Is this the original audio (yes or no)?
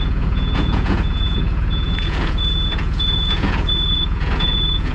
no